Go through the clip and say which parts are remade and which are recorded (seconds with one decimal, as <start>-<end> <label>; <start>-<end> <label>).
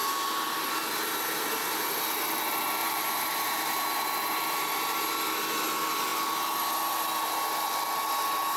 0.0-2.8 recorded; 2.8-5.0 remade; 5.0-8.6 recorded